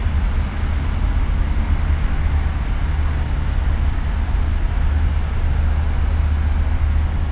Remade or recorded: recorded